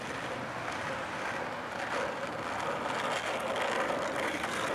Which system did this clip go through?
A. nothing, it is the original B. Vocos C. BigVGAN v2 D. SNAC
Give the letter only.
A